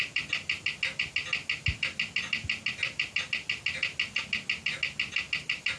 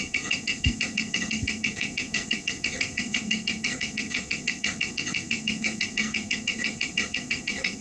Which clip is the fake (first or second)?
second